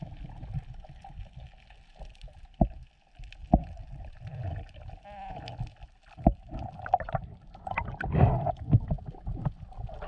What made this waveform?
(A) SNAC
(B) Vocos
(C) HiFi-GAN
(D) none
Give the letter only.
D